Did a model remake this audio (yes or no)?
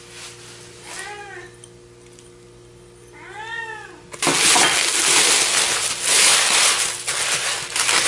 no